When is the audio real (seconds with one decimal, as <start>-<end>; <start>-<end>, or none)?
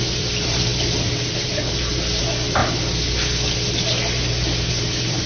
0.7-2.2; 2.6-4.7